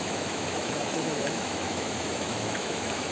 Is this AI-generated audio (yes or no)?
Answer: yes